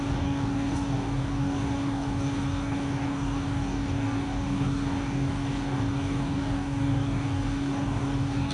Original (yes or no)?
no